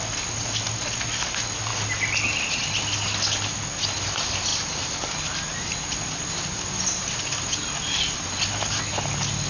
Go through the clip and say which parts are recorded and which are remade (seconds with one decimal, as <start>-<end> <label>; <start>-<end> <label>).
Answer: 0.0-9.5 recorded

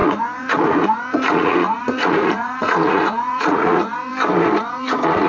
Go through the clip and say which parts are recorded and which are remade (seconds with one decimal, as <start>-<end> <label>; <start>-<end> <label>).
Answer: 0.0-4.1 remade; 4.1-4.6 recorded; 4.6-5.3 remade

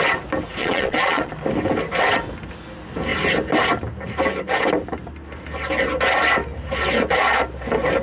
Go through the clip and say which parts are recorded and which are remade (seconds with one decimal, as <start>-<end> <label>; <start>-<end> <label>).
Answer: 0.0-0.6 recorded; 0.6-1.3 remade; 1.3-8.0 recorded